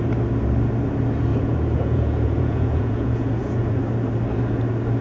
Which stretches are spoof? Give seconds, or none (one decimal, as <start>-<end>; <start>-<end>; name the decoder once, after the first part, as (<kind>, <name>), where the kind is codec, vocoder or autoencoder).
1.3-3.8 (vocoder, Vocos)